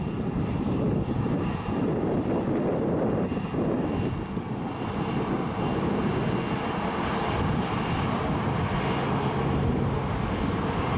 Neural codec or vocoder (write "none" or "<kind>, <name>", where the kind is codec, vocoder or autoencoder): none